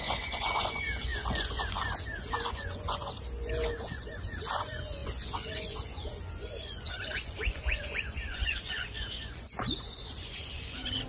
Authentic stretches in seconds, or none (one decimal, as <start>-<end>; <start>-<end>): none